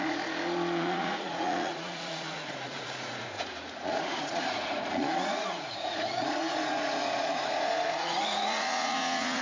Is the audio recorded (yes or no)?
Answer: no